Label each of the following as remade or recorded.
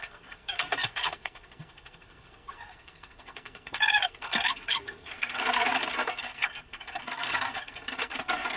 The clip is remade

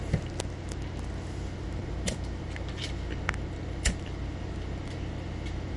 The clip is recorded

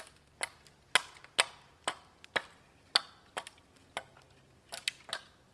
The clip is recorded